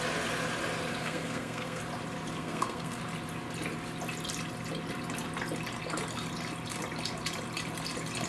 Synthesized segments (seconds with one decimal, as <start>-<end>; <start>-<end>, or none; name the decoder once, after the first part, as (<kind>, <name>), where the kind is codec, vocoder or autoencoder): 1.0-1.8 (codec, SNAC); 2.4-3.0